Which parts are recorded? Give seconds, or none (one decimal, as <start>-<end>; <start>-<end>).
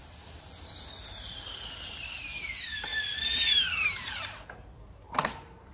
0.0-5.7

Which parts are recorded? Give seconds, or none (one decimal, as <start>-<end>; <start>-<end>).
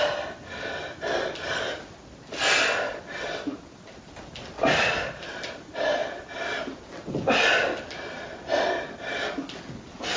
0.0-10.2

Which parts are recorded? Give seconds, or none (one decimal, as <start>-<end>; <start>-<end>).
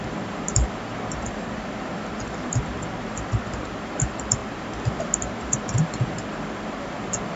0.0-7.4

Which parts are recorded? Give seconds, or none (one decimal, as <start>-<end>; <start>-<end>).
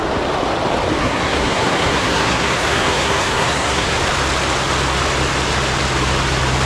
0.0-1.0; 4.0-6.7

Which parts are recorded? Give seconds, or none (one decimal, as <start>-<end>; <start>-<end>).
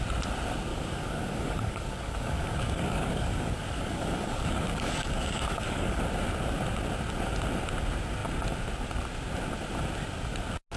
0.0-0.7; 6.0-10.8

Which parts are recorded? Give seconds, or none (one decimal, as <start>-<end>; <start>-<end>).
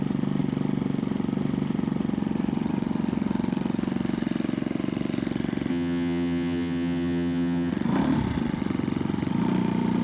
0.0-5.7; 7.7-10.0